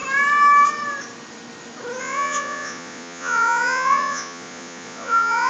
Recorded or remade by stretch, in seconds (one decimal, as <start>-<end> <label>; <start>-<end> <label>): 0.0-2.0 recorded; 2.0-5.5 remade

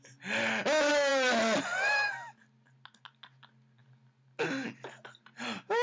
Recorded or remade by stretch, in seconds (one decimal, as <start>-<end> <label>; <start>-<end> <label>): 0.0-5.8 recorded

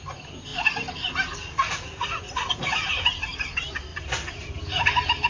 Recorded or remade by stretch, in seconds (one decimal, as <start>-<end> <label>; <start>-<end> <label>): 0.0-5.3 recorded

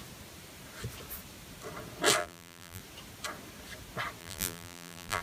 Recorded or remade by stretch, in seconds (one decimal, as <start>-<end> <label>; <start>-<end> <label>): 0.0-2.2 recorded; 2.2-2.8 remade; 2.8-4.2 recorded; 4.2-5.2 remade

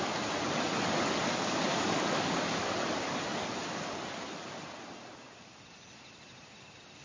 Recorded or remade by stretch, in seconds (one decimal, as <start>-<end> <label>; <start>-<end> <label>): 0.0-1.3 recorded; 1.3-2.6 remade; 2.6-7.0 recorded

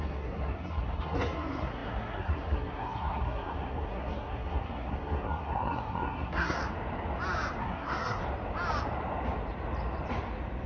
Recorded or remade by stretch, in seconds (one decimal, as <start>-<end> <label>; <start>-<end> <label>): 0.0-6.6 remade; 6.6-7.6 recorded; 7.6-8.2 remade; 8.2-10.7 recorded

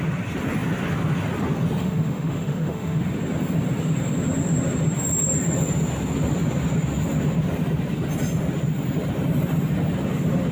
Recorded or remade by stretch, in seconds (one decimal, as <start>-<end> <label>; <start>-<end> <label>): 0.0-1.8 recorded; 1.8-3.0 remade; 3.0-10.5 recorded